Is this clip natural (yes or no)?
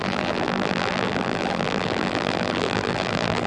no